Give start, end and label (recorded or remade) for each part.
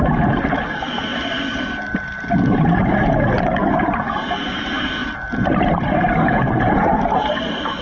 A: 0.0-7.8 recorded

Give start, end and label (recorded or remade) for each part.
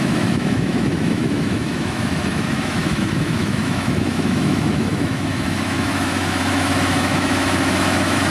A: 0.0-8.3 remade